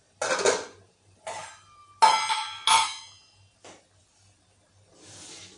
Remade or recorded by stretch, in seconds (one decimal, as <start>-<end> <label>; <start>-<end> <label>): 0.0-5.6 recorded